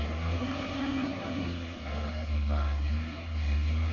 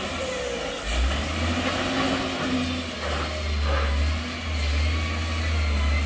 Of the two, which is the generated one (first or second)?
first